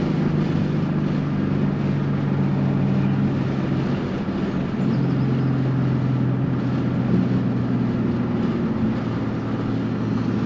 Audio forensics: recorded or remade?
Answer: recorded